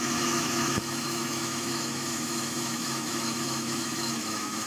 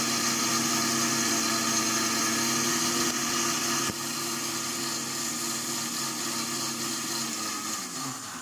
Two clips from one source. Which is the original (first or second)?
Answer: second